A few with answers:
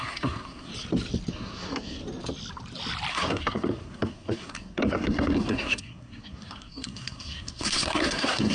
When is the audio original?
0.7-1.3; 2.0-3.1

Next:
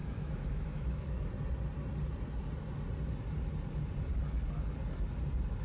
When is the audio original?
1.3-5.6

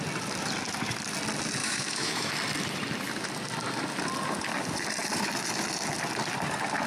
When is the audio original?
0.0-1.6; 2.3-6.9